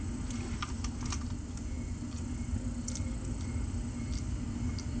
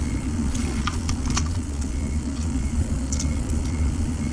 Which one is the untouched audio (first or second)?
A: first